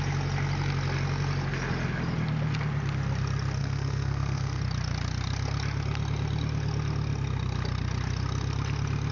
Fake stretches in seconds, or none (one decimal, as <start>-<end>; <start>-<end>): 3.6-4.6